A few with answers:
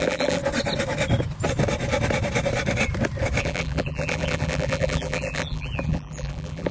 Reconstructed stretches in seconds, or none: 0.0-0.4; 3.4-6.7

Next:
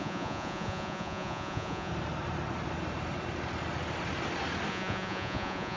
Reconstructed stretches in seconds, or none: 0.0-1.9; 4.7-5.8

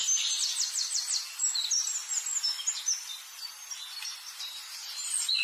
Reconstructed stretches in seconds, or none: none

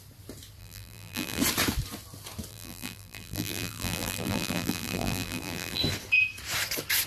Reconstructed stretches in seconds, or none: 0.6-1.4; 2.5-5.8

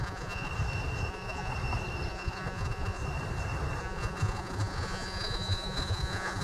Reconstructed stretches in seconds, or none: 0.0-0.5; 1.1-1.5; 2.1-3.0; 3.8-6.4

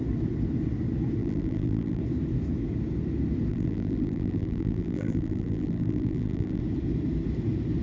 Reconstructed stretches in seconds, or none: 1.2-2.0; 3.5-6.6

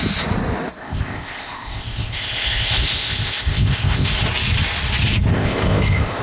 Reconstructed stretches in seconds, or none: 0.8-4.1; 5.3-6.2